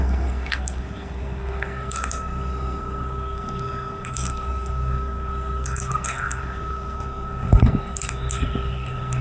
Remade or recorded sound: remade